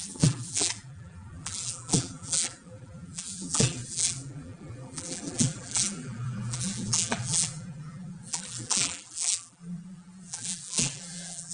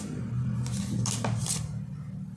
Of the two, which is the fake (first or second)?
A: first